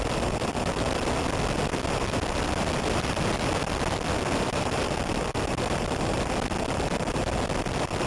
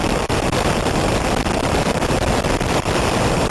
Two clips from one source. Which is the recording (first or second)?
first